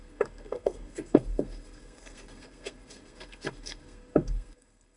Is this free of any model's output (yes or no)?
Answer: no